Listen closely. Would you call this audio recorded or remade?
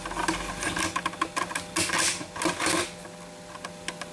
recorded